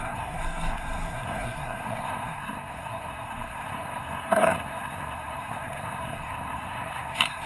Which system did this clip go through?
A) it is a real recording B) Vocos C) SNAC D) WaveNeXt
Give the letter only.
C